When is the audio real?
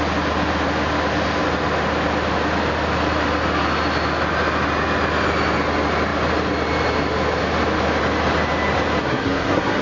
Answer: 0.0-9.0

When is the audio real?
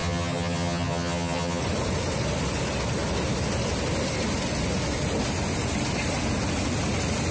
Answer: 1.6-7.3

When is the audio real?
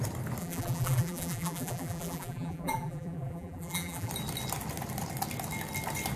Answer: 0.0-0.4; 4.1-6.2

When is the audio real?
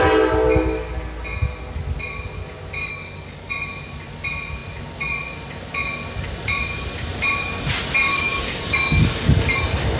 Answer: 0.0-2.8; 3.5-8.1; 9.6-10.0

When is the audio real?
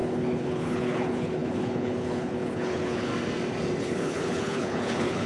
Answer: 3.1-3.8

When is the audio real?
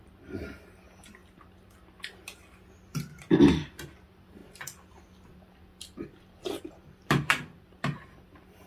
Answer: 1.2-2.7